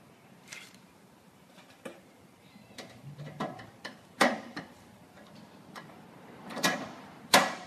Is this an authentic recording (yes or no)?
no